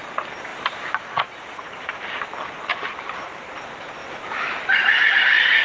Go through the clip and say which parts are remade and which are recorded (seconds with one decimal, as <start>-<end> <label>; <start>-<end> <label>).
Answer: 0.0-0.5 recorded; 0.5-2.2 remade; 2.2-2.7 recorded; 2.7-3.5 remade; 3.5-4.0 recorded; 4.0-4.9 remade; 4.9-5.6 recorded